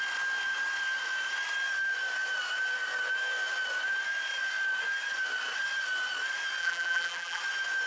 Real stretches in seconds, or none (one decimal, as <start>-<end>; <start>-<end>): 0.0-6.6; 7.4-7.9